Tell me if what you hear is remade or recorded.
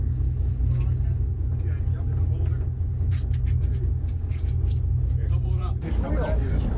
recorded